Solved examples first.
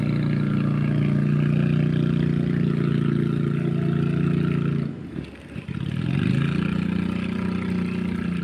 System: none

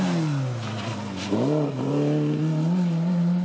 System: none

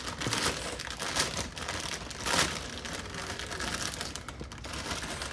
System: none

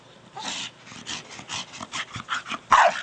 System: none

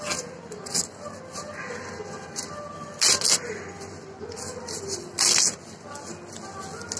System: none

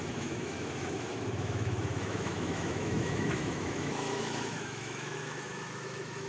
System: autoencoder, DAC-VAE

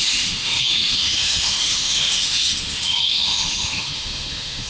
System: autoencoder, DAC-VAE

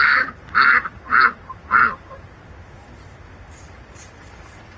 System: none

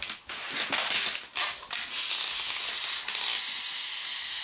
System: none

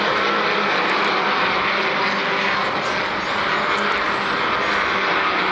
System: none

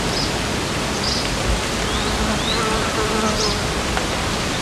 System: none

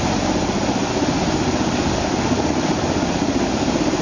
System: none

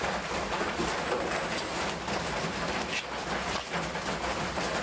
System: none